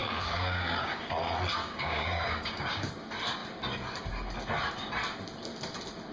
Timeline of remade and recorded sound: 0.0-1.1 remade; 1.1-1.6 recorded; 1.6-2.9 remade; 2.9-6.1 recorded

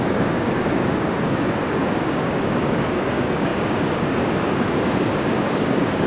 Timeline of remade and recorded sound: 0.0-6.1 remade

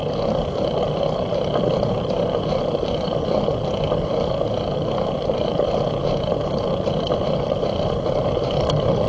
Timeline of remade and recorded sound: 0.0-9.1 recorded

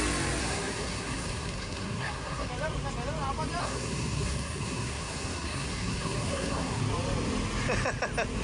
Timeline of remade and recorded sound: 0.0-0.4 recorded; 0.4-2.5 remade; 2.5-3.6 recorded; 3.6-6.8 remade; 6.8-8.4 recorded

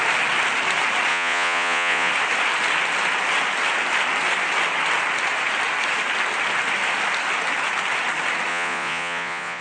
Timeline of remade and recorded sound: 0.0-1.1 recorded; 1.1-2.1 remade; 2.1-8.5 recorded; 8.5-9.6 remade

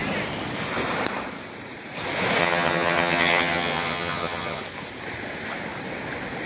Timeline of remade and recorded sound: 0.0-2.4 recorded; 2.4-4.6 remade; 4.6-6.5 recorded

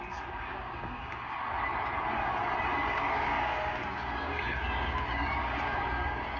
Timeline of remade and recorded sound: 0.0-1.4 remade; 1.4-2.8 recorded; 2.8-6.4 remade

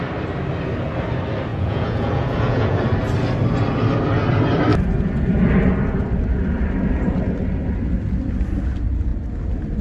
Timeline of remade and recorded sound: 0.0-1.5 recorded; 1.5-2.8 remade; 2.8-9.8 recorded